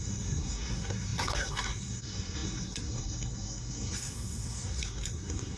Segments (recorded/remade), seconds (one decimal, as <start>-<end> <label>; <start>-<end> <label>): 0.0-5.6 remade